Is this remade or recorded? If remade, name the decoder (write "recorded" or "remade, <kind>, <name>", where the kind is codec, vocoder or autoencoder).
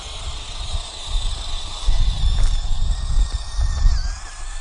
recorded